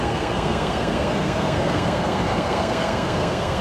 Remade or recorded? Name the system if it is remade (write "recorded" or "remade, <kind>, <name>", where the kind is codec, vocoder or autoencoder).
remade, codec, SNAC